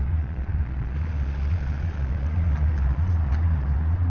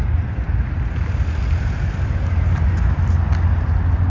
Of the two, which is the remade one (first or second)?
first